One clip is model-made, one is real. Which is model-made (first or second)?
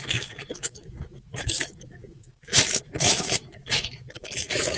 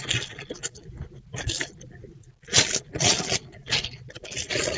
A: first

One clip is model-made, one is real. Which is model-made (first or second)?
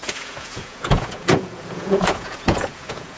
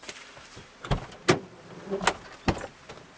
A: first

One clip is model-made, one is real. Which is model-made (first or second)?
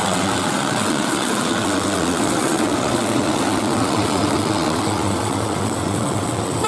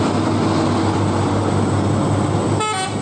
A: first